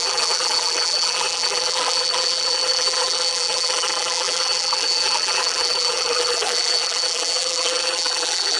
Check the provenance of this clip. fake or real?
fake